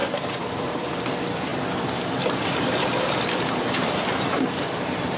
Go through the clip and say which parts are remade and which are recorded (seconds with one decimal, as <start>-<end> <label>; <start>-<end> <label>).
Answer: 0.0-5.2 remade